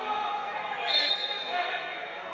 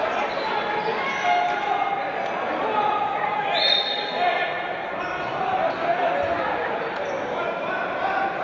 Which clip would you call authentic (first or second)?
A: second